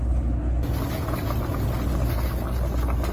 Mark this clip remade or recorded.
recorded